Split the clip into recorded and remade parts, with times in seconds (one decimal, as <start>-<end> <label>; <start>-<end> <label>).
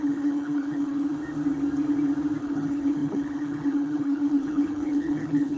0.0-1.1 remade; 1.1-2.4 recorded; 2.4-5.6 remade